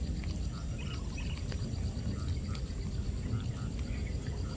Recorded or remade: recorded